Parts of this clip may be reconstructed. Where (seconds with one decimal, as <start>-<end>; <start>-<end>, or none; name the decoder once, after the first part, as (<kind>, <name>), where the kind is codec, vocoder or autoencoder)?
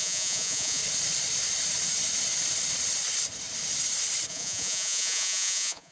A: 0.0-0.8 (vocoder, Vocos); 4.3-5.9